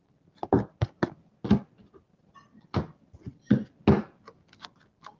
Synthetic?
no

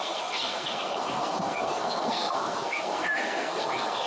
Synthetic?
yes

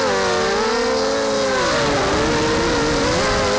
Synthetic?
no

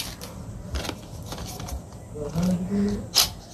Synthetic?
no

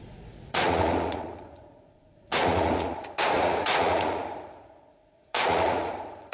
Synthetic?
yes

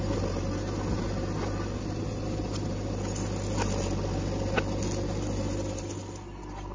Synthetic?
no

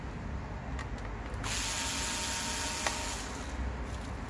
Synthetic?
no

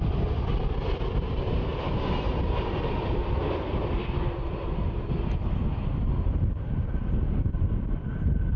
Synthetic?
no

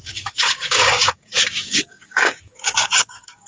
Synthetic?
yes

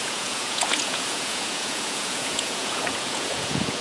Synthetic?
yes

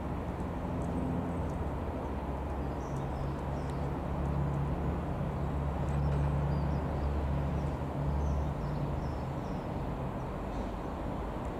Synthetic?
no